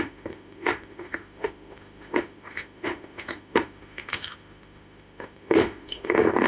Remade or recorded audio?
remade